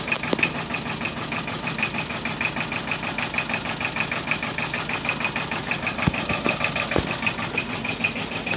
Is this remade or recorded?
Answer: recorded